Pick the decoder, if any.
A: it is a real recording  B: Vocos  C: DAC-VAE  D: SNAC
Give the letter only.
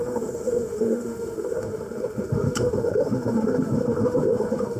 C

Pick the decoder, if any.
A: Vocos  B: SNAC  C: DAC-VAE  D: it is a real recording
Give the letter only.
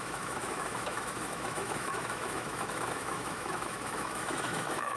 C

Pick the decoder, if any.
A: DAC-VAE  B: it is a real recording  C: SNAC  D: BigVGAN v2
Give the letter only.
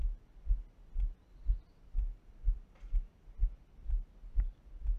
B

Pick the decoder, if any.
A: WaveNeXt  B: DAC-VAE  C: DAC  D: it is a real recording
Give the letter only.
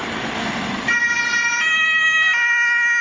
D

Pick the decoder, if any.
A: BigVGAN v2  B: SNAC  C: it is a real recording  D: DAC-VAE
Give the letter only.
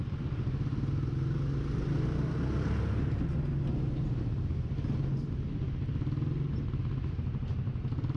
C